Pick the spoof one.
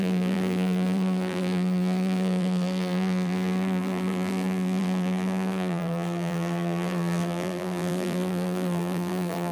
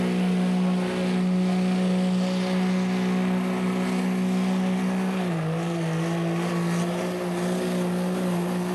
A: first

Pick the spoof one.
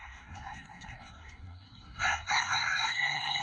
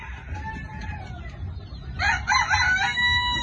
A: first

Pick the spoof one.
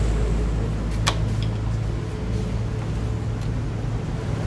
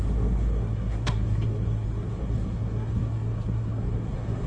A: second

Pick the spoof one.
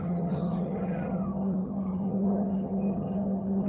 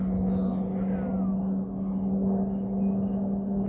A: first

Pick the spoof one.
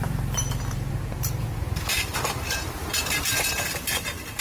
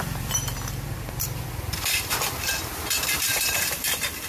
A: second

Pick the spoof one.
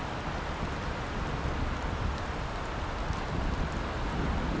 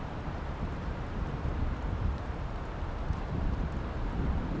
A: second